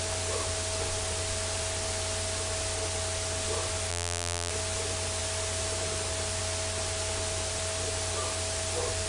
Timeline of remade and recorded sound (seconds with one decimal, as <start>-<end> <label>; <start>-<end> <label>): 0.0-3.9 recorded; 3.9-4.5 remade; 4.5-9.1 recorded